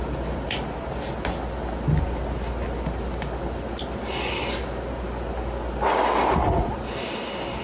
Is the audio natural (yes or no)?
yes